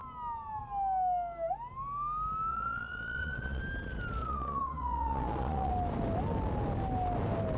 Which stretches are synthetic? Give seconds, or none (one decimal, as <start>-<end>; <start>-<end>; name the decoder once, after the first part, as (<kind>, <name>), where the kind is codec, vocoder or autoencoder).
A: 2.5-3.6 (vocoder, Vocos); 4.2-5.7